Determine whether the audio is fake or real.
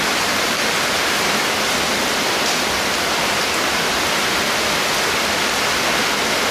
real